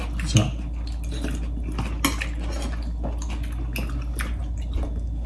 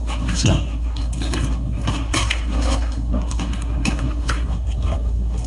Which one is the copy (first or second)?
second